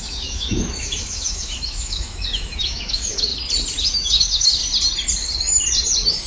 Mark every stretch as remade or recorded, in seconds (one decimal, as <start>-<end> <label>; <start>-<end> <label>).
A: 0.0-3.3 remade; 3.3-3.8 recorded; 3.8-4.6 remade; 4.6-6.3 recorded